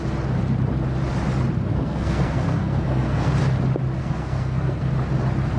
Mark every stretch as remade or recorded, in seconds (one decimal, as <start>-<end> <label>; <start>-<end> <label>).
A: 0.0-1.7 recorded; 1.7-3.3 remade; 3.3-4.0 recorded; 4.0-4.9 remade; 4.9-5.6 recorded